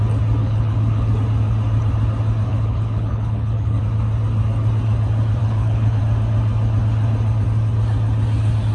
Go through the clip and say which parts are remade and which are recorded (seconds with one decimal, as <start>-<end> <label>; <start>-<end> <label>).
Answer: 0.0-0.4 recorded; 0.4-1.1 remade; 1.1-2.5 recorded; 2.5-3.8 remade; 3.8-5.4 recorded; 5.4-6.0 remade; 6.0-8.7 recorded